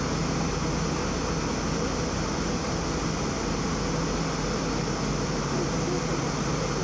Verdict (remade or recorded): recorded